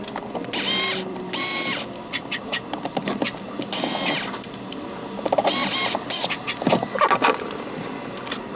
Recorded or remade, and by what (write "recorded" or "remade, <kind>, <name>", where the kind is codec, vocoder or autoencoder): recorded